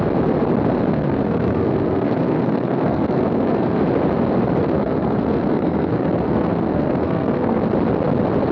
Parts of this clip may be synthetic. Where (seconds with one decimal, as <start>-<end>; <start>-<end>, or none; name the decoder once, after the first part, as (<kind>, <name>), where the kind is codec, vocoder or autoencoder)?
0.9-3.8 (codec, SNAC); 4.6-7.6

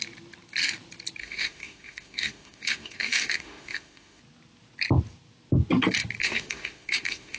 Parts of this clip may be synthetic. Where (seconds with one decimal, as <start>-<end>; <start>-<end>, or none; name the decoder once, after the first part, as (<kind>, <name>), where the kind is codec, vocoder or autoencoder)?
1.2-4.2 (autoencoder, DAC-VAE); 6.2-7.4

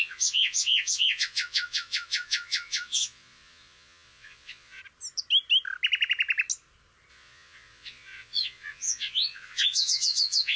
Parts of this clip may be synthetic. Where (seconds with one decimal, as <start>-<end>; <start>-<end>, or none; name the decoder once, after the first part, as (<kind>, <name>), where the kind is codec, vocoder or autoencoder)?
0.0-4.8 (vocoder, Vocos); 7.1-10.6

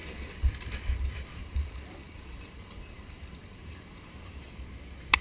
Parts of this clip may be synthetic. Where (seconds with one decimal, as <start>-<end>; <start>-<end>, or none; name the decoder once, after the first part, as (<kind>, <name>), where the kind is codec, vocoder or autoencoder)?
0.0-0.5 (vocoder, BigVGAN v2); 1.4-4.5

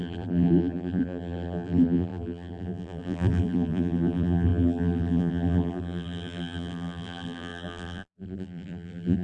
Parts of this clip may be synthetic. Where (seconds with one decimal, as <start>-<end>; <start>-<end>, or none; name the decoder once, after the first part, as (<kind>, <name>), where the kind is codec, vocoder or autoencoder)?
0.0-9.2 (vocoder, BigVGAN v2)

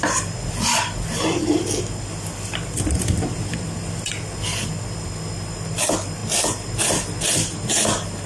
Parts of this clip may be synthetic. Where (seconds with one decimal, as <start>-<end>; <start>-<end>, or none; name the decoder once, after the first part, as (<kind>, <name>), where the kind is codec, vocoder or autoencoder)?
none

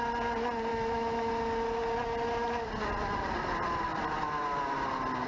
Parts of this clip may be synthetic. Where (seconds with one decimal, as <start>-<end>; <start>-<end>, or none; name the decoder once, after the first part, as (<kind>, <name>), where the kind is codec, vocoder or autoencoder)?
0.7-1.3 (autoencoder, DAC-VAE)

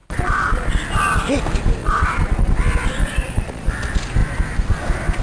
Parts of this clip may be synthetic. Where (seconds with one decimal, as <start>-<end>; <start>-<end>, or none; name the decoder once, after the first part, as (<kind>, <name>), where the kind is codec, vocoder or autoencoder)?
0.0-0.7 (vocoder, Vocos); 1.8-2.5; 3.0-3.7